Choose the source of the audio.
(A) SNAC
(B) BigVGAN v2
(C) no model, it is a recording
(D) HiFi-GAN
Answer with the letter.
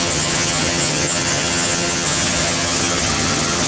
D